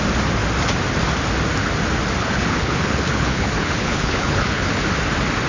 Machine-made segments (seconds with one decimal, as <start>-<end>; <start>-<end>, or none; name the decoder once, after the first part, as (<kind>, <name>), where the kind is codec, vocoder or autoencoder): 2.2-4.7 (codec, HILCodec)